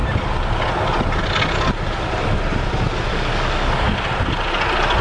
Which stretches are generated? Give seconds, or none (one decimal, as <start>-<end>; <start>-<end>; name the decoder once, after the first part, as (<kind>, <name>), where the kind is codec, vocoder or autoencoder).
3.1-3.9 (codec, DAC)